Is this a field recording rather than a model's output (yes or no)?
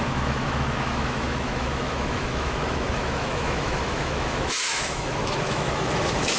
no